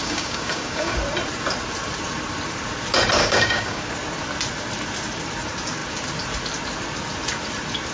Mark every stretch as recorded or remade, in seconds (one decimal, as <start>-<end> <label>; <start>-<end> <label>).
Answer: 0.0-1.0 remade; 1.0-3.2 recorded; 3.2-3.9 remade; 3.9-7.9 recorded